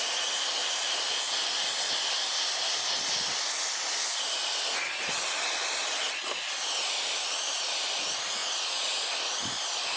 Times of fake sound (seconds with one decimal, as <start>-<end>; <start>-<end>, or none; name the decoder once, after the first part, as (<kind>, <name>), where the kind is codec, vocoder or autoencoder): 8.4-9.1 (vocoder, Vocos)